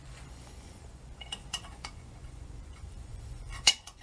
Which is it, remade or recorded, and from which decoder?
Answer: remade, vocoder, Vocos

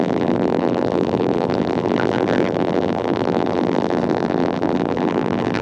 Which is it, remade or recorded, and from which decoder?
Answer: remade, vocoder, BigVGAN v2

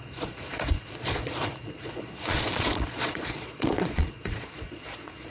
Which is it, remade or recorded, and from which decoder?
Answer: remade, vocoder, Vocos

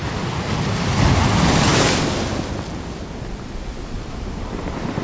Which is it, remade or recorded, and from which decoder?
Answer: recorded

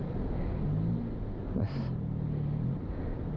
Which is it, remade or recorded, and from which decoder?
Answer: recorded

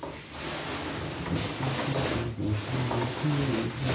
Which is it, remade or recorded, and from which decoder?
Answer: recorded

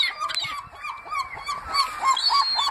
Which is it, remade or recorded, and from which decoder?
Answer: recorded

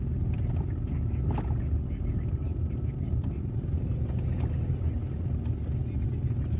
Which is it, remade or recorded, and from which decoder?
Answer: recorded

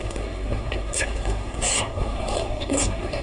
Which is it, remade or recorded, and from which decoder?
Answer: remade, codec, SNAC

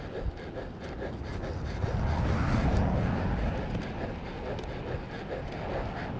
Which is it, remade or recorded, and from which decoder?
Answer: recorded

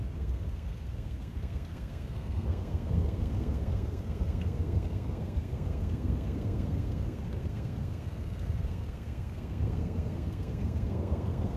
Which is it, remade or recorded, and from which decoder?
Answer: remade, codec, SNAC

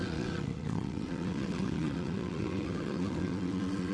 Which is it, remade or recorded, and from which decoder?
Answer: remade, vocoder, WaveNeXt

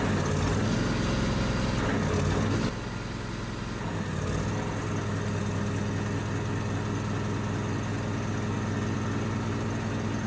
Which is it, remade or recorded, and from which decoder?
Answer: recorded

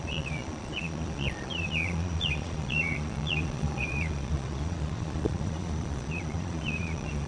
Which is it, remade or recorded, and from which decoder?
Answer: remade, vocoder, Vocos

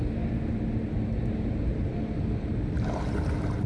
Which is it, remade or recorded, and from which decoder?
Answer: recorded